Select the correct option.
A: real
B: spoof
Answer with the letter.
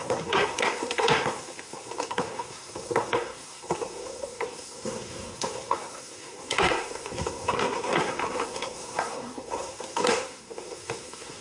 B